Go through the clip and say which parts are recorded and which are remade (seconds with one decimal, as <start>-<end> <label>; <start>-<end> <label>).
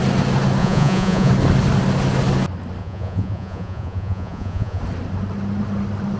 0.0-0.6 recorded; 0.6-1.3 remade; 1.3-2.8 recorded; 2.8-4.8 remade; 4.8-6.2 recorded